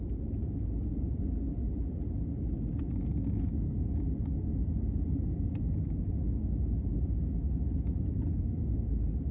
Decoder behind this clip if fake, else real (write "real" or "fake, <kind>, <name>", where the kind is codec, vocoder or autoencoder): real